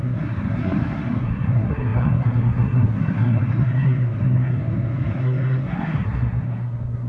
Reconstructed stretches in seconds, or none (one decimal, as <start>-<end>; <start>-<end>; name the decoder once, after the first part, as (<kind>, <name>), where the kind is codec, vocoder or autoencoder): 0.0-7.1 (codec, SNAC)